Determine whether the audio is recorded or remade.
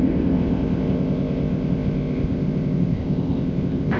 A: remade